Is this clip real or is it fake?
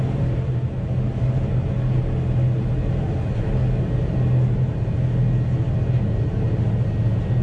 real